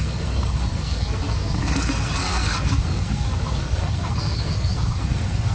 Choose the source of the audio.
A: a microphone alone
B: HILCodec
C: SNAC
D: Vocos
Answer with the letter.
C